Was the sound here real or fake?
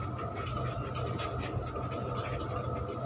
real